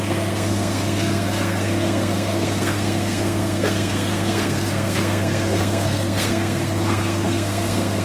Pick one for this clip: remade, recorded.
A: remade